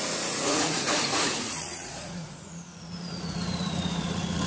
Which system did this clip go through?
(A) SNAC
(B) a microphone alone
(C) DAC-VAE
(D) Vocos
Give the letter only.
D